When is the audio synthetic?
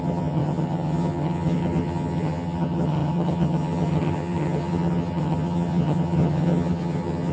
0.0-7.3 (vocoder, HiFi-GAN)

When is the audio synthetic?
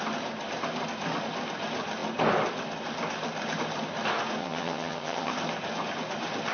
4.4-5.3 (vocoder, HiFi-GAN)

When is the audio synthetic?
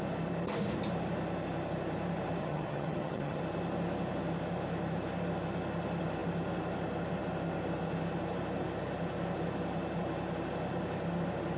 2.4-3.4 (vocoder, HiFi-GAN)